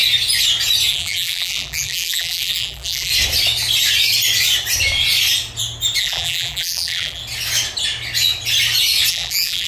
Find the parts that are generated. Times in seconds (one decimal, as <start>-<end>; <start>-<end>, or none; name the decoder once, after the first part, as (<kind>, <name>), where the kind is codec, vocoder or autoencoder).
0.9-3.1 (vocoder, BigVGAN v2); 6.0-7.2; 9.1-9.7